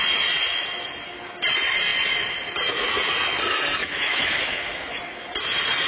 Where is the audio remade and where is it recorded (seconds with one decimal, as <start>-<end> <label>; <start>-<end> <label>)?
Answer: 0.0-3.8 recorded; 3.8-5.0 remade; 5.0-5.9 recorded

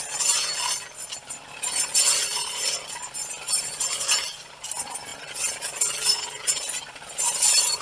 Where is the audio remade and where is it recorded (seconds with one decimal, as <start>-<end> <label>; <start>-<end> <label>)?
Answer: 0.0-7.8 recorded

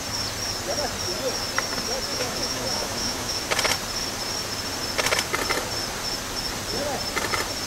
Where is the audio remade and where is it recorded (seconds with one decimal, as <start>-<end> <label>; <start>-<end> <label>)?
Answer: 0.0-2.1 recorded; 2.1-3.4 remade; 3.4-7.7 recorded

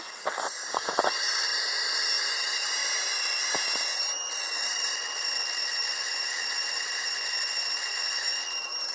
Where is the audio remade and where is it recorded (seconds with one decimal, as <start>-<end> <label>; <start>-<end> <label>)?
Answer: 0.0-7.9 recorded; 7.9-8.4 remade; 8.4-8.9 recorded

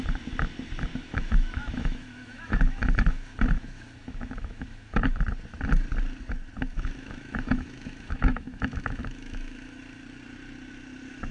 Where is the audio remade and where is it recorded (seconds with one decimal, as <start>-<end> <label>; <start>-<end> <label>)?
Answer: 0.0-0.9 recorded; 0.9-5.2 remade; 5.2-6.7 recorded; 6.7-9.8 remade; 9.8-11.3 recorded